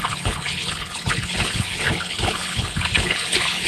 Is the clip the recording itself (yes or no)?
no